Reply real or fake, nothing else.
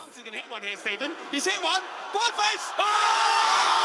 fake